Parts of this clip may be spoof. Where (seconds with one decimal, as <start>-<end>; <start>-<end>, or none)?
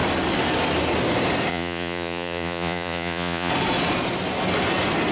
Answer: 1.5-3.5